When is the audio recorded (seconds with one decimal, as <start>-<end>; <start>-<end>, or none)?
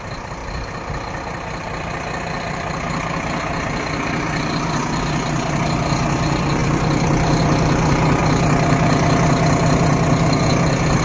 0.4-5.6; 8.2-11.0